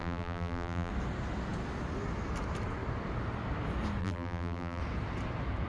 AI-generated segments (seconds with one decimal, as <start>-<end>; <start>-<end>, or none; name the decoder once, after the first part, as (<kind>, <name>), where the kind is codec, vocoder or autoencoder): 0.0-0.9 (vocoder, BigVGAN v2); 4.0-4.8